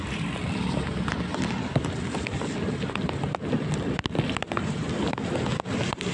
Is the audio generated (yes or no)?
no